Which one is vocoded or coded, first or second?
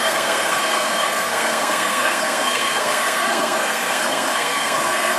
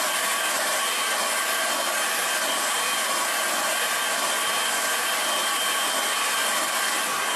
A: first